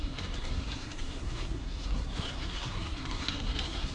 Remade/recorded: remade